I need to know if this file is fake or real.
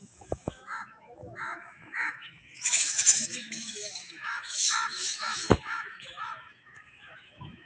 fake